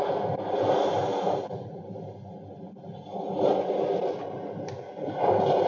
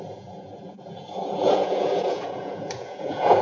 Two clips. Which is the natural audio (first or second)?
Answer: first